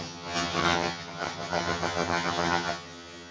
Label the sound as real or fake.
fake